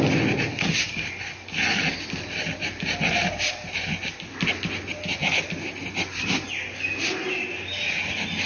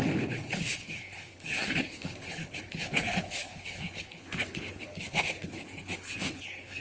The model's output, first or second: second